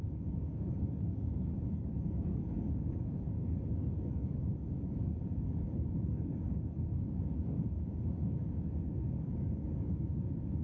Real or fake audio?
fake